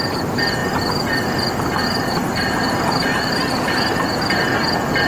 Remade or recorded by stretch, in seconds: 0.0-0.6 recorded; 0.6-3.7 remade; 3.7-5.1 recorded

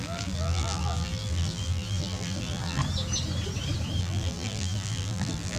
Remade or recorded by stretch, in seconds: 0.0-2.8 remade; 2.8-4.0 recorded; 4.0-5.6 remade

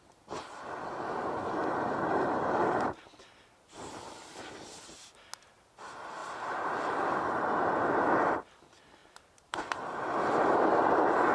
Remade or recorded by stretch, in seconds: 0.0-1.6 recorded; 1.6-4.7 remade; 4.7-6.2 recorded; 6.2-7.2 remade; 7.2-9.0 recorded; 9.0-10.0 remade; 10.0-11.3 recorded

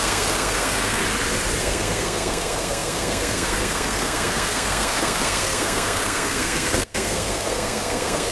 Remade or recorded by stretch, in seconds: 0.0-1.0 remade; 1.0-1.6 recorded; 1.6-8.3 remade

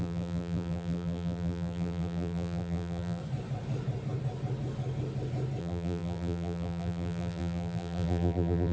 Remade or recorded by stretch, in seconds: 0.0-3.2 remade; 3.2-5.6 recorded; 5.6-8.7 remade